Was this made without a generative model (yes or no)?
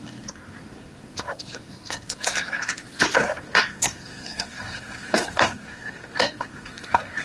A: no